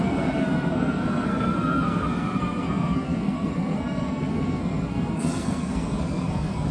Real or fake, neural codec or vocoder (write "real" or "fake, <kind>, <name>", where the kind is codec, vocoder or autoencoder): fake, codec, SNAC